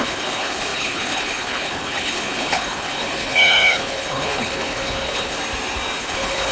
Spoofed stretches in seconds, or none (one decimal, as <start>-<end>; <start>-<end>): 0.0-5.4; 6.0-6.5